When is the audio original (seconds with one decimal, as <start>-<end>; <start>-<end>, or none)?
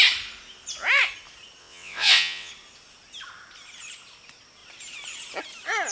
0.0-1.6; 2.5-5.9